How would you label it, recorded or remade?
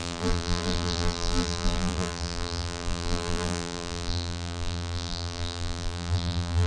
remade